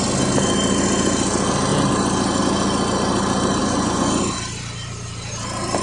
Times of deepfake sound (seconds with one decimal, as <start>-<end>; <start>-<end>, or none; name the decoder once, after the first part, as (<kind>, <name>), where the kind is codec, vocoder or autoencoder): 3.6-4.2 (vocoder, Vocos)